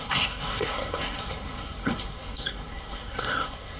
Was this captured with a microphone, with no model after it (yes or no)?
no